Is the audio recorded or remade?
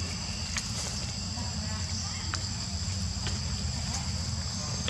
recorded